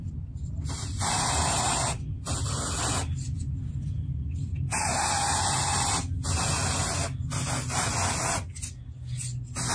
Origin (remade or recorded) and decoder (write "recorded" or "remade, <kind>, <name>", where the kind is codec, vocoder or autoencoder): recorded